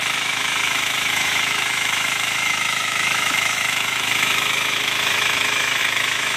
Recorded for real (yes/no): no